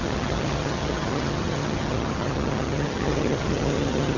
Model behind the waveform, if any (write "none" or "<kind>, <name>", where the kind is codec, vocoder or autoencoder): vocoder, HiFi-GAN